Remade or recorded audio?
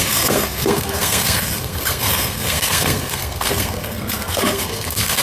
remade